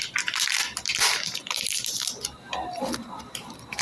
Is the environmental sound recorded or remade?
recorded